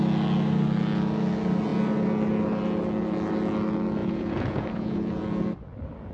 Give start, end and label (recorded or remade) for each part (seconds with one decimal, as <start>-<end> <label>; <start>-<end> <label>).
0.0-4.0 recorded; 4.0-5.1 remade; 5.1-6.1 recorded